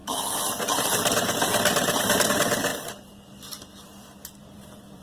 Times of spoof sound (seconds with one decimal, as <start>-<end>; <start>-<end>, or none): 2.0-2.7; 4.4-5.0